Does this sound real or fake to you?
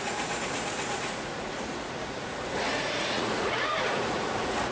fake